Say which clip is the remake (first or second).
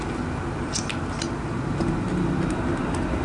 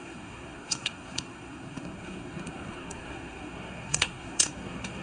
second